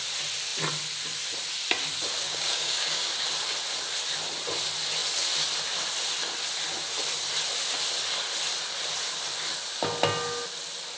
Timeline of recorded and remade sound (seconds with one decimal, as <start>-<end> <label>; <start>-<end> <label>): 0.0-2.2 recorded; 2.2-3.1 remade; 3.1-11.0 recorded